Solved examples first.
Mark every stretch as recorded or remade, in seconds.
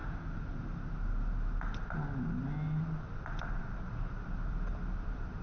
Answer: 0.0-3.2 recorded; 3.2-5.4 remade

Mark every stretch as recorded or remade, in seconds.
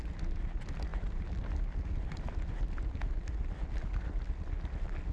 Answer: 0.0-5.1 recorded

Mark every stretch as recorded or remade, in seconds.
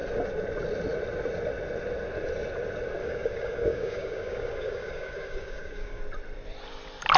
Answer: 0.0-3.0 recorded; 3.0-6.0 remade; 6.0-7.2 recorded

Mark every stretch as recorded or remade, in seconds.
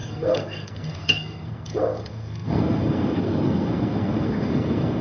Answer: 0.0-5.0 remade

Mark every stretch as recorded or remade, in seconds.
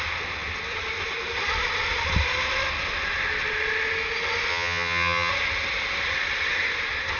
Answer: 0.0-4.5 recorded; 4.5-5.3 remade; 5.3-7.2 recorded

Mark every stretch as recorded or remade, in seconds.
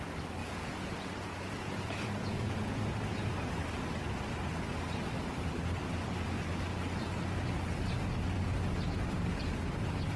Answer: 0.0-0.4 recorded; 0.4-2.8 remade; 2.8-10.2 recorded